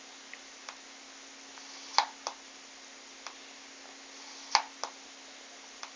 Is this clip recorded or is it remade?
recorded